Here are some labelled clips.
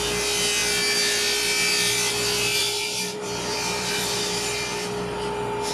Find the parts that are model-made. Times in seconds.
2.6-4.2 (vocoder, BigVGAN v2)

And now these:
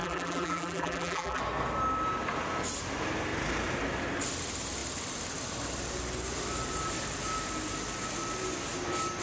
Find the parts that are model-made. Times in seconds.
0.0-1.4 (vocoder, BigVGAN v2)

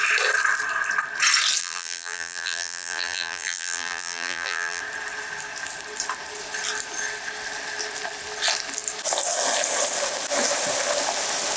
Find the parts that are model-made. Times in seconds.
1.6-4.8 (vocoder, BigVGAN v2)